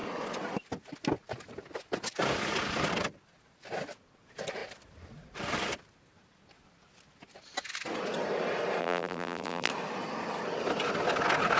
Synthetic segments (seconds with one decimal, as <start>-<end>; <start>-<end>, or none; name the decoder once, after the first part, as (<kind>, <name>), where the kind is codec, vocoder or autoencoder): 8.8-9.7 (vocoder, BigVGAN v2)

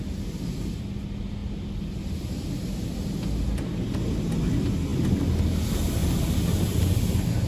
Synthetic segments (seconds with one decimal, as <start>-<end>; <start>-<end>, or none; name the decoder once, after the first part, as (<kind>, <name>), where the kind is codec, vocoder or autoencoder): 6.0-7.5 (vocoder, BigVGAN v2)

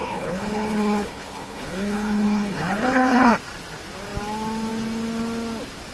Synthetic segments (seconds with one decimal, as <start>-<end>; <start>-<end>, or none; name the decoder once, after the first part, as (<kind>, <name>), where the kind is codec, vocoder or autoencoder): 0.0-3.3 (codec, HILCodec)

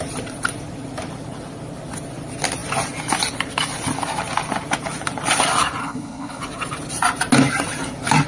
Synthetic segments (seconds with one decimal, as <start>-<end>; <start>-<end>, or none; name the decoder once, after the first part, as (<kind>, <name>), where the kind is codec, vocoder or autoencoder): 5.8-6.4 (codec, HILCodec)